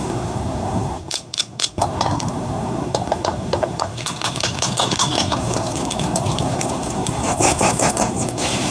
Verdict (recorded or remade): remade